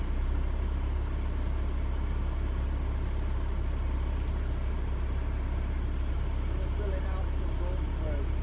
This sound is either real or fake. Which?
real